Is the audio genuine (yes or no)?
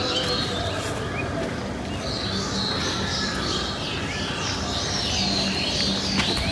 yes